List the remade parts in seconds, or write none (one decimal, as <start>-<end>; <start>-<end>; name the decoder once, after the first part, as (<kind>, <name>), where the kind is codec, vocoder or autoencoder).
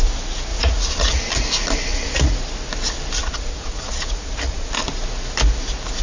0.5-1.2 (vocoder, Vocos); 1.9-2.4; 3.2-4.7